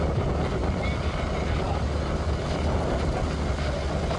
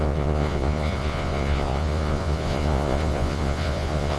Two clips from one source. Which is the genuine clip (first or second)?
first